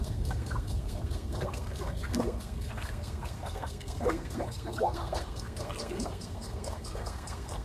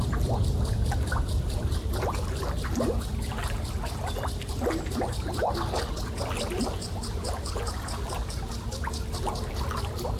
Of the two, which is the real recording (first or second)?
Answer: second